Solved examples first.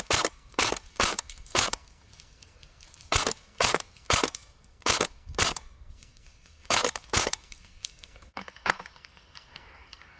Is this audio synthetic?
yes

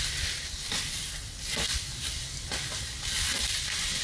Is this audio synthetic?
no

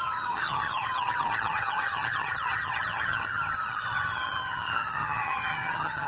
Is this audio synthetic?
yes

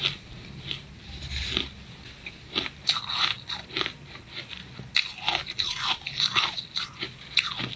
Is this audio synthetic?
no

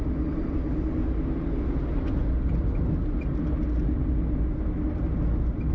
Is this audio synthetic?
no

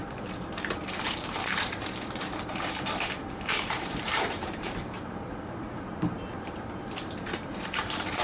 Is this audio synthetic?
yes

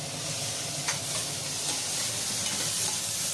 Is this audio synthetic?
no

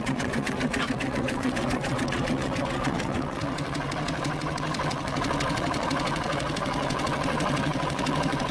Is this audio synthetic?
yes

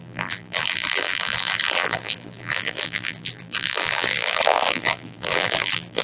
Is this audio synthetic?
yes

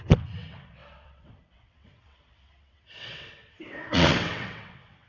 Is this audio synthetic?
yes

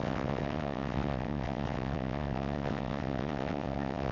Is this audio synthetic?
yes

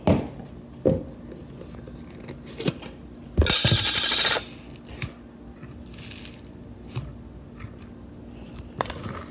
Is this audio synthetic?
no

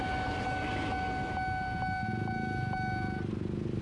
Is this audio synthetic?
no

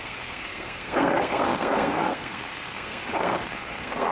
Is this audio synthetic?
yes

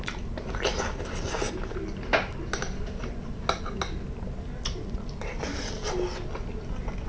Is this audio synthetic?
no